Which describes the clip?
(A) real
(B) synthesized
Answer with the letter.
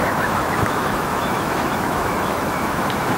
B